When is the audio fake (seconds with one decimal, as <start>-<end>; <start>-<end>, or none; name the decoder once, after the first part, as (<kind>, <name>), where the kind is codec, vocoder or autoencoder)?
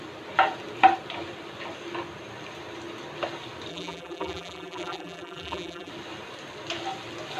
3.7-5.9 (vocoder, BigVGAN v2)